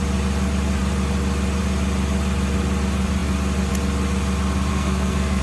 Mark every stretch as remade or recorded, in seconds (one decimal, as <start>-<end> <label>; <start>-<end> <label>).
0.0-4.7 recorded; 4.7-5.4 remade